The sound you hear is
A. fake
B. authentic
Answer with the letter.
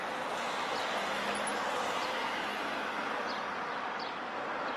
B